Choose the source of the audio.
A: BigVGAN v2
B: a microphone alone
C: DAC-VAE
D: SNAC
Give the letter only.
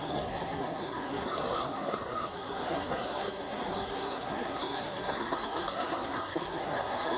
D